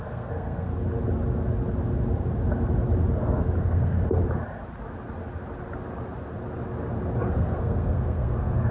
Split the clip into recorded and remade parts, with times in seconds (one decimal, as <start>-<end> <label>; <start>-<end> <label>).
0.0-0.7 remade; 0.7-3.6 recorded; 3.6-4.2 remade; 4.2-7.3 recorded; 7.3-8.7 remade